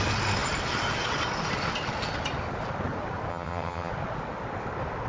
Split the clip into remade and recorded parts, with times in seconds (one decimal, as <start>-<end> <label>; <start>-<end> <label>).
0.0-3.3 recorded; 3.3-3.9 remade; 3.9-5.1 recorded